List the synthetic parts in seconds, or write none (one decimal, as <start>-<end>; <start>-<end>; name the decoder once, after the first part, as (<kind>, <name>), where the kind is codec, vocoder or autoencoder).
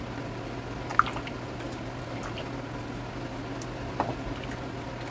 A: none